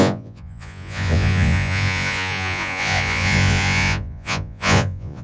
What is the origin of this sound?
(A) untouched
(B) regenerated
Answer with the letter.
B